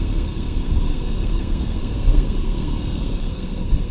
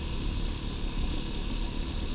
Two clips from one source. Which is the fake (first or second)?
first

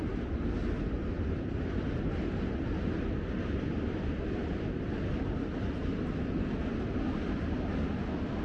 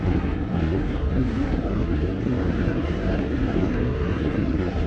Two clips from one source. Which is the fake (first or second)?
second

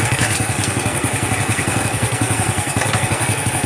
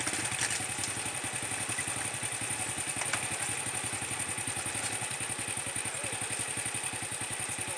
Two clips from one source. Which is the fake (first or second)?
first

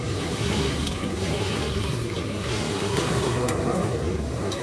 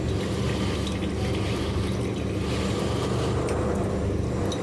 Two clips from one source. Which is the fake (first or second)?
first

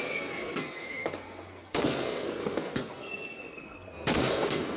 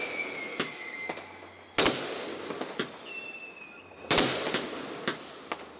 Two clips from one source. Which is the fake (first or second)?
first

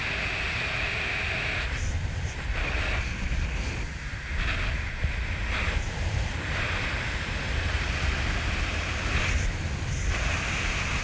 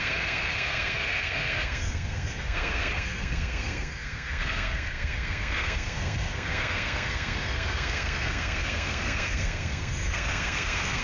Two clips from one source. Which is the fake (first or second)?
second